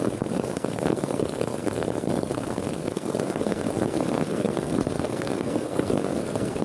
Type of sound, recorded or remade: remade